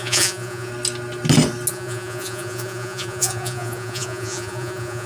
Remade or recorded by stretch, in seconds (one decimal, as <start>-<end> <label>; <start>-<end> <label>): 0.0-0.7 remade; 0.7-1.7 recorded; 1.7-5.1 remade